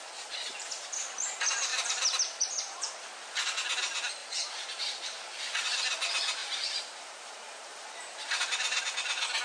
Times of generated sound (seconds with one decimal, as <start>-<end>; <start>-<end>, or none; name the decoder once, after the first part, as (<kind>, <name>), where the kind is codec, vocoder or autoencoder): 1.7-2.9 (vocoder, BigVGAN v2); 4.2-5.2; 6.4-8.8